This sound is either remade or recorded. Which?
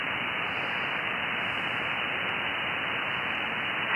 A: recorded